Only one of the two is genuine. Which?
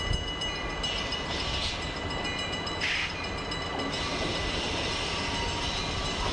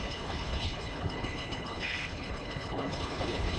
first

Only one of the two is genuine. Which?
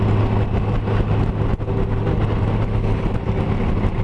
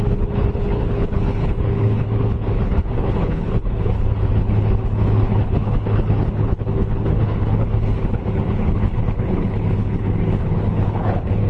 first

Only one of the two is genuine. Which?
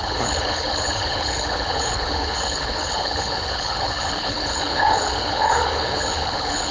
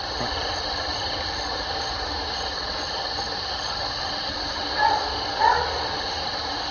second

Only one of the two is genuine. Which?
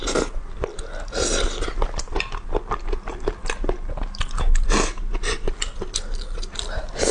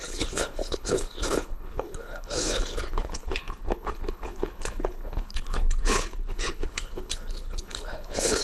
first